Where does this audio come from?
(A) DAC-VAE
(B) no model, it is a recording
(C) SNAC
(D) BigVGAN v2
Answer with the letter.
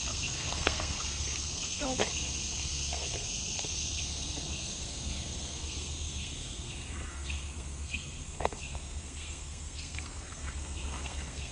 C